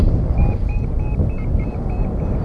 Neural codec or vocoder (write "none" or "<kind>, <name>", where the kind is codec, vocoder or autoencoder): none